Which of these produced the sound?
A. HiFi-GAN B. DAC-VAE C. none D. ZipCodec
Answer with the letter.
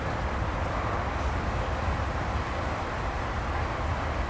C